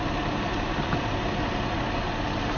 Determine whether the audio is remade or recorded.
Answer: recorded